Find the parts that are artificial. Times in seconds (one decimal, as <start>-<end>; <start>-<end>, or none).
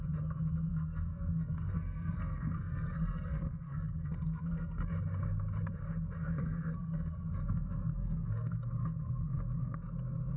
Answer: 0.7-4.9; 6.4-8.7